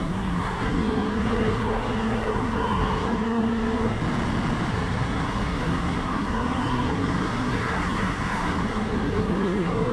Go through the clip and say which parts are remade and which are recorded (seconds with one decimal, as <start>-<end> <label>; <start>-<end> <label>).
0.0-4.0 remade; 4.0-4.7 recorded; 4.7-9.9 remade